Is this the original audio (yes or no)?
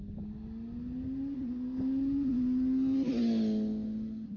yes